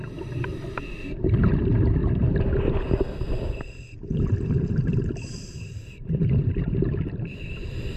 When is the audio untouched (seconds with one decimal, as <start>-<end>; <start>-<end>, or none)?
0.5-1.6; 2.0-2.6